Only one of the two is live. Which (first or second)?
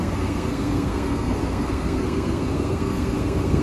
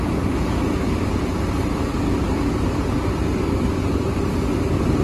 second